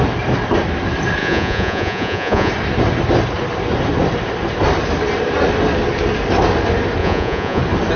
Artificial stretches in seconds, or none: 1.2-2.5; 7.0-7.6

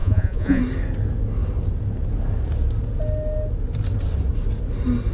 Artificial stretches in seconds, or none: 0.0-0.6

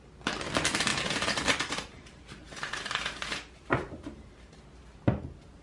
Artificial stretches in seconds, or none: 0.9-4.3

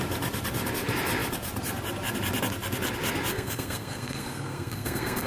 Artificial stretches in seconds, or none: 3.3-5.3

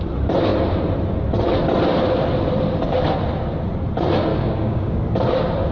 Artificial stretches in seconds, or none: 4.3-5.0

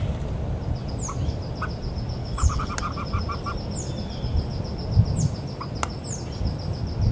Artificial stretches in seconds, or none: 2.2-2.7

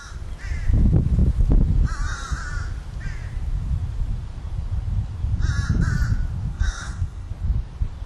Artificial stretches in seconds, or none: 6.5-7.3

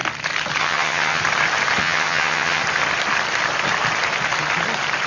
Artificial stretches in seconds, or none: 0.6-1.2; 1.8-2.6